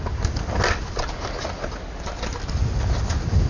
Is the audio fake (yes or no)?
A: no